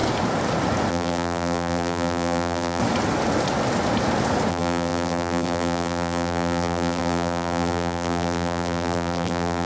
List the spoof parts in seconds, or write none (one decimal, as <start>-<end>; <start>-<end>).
0.9-2.8; 4.5-9.7